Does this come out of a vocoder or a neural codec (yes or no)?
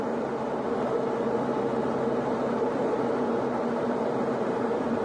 yes